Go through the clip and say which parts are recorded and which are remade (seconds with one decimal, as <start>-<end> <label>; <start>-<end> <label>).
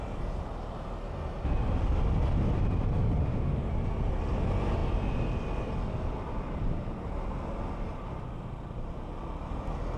0.0-3.2 recorded; 3.2-3.7 remade; 3.7-10.0 recorded